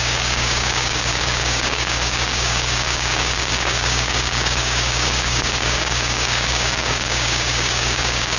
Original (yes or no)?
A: no